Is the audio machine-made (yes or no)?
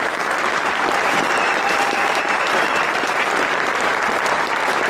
yes